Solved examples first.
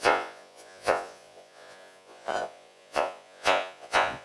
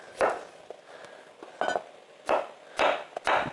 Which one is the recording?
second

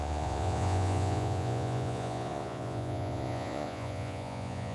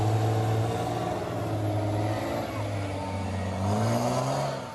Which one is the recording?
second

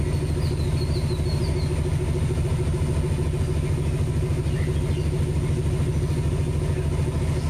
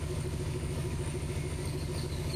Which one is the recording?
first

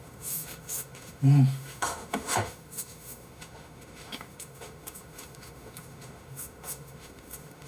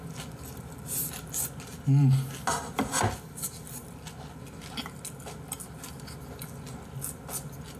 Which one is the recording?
second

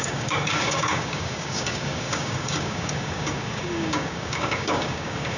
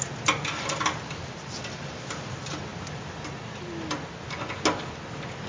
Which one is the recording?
second